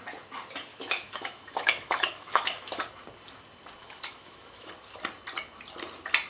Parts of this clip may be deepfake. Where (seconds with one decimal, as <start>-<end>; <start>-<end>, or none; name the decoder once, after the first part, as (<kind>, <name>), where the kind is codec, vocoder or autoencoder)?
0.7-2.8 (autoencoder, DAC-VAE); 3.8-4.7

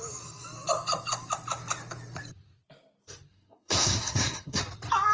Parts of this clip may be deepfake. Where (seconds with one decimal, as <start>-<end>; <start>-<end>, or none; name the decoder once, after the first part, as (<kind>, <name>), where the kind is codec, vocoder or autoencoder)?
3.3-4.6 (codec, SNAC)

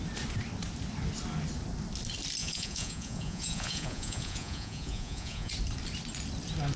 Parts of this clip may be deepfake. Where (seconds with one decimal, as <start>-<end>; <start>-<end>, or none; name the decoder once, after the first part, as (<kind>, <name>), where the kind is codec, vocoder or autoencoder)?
2.4-5.5 (vocoder, Vocos)

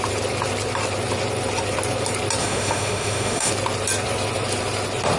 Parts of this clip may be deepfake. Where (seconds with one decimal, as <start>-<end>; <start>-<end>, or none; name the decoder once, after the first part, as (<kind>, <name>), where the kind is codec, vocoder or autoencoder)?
2.4-3.5 (autoencoder, DAC-VAE)